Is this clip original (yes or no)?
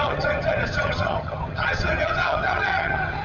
no